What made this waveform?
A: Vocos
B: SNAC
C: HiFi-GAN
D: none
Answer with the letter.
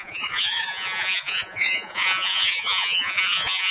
A